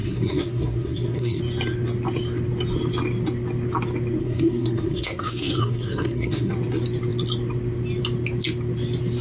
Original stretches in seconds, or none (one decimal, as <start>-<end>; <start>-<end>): 1.4-4.2; 6.5-9.2